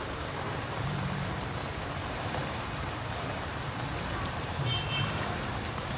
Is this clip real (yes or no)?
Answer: no